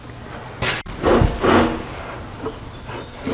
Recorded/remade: recorded